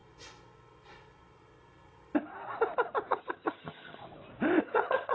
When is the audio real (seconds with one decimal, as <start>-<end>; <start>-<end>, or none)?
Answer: 0.0-3.1; 4.0-4.6